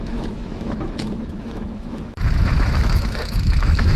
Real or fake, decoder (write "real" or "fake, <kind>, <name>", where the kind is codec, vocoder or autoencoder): fake, autoencoder, DAC-VAE